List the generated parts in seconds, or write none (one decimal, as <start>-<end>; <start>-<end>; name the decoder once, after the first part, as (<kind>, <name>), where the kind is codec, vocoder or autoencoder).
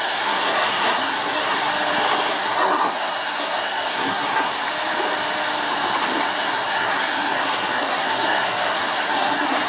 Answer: 0.0-1.7 (codec, SNAC); 2.3-4.5; 6.4-9.7